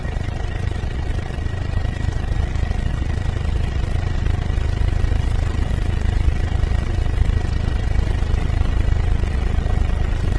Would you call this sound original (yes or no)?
no